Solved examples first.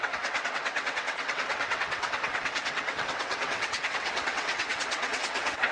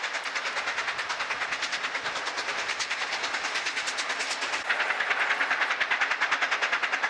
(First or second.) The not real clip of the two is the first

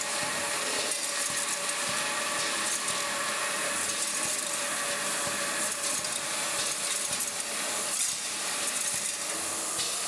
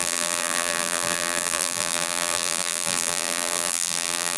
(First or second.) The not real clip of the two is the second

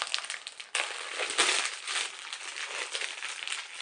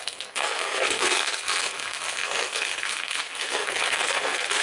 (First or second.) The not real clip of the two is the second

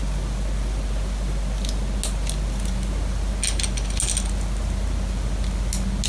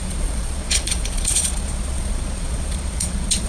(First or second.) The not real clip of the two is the second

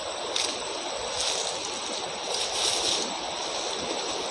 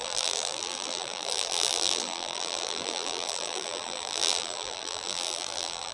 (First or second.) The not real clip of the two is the second